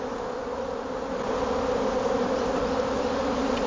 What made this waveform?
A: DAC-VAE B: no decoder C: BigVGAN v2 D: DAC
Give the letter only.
B